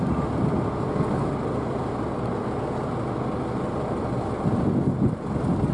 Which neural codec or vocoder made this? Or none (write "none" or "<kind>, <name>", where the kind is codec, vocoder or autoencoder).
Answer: none